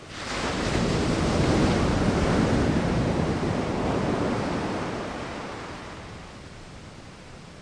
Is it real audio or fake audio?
real